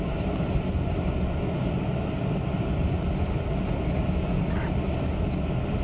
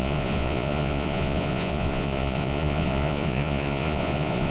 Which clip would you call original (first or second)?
first